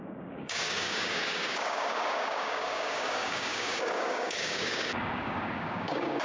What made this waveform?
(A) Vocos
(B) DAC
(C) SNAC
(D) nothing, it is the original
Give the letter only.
B